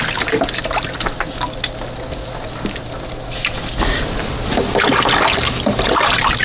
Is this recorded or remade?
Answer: recorded